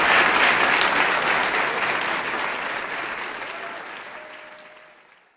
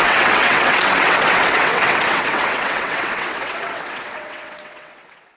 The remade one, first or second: second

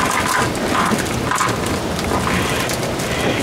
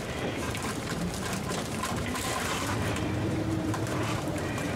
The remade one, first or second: second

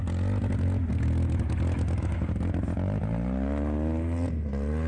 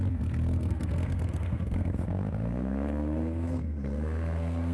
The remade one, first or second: second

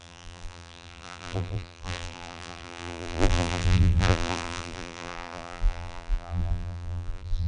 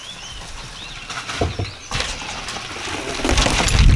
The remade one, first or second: first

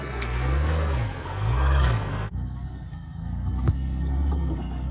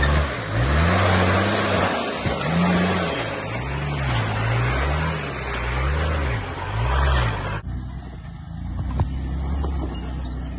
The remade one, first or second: first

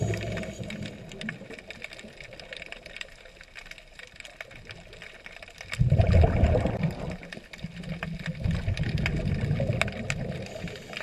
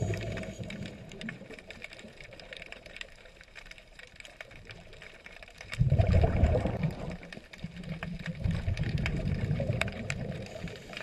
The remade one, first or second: second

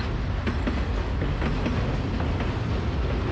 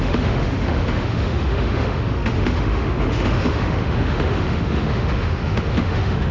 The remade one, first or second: second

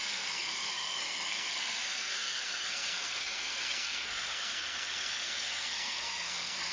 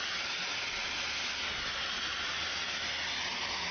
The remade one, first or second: first